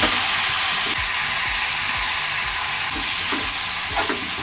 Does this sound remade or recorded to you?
recorded